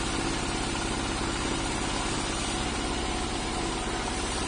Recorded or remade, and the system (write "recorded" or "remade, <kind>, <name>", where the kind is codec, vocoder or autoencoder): recorded